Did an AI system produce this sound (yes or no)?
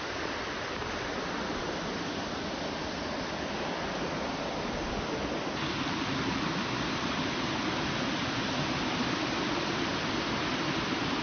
no